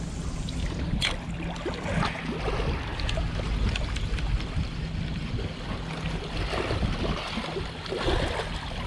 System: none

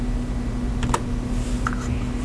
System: none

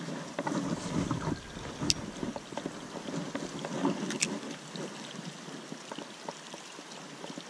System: none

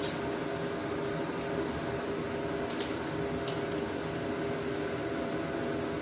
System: none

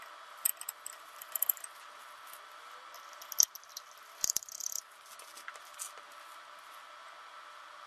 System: none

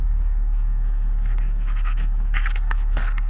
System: codec, SNAC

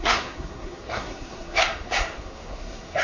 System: codec, SNAC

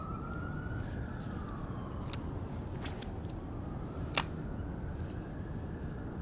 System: none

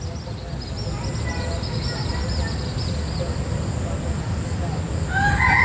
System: none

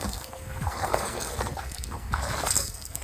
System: codec, SNAC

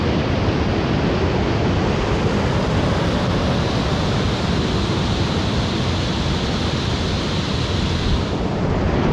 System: none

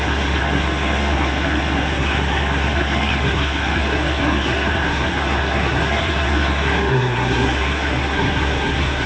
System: codec, SNAC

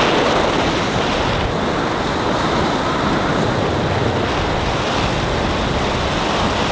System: none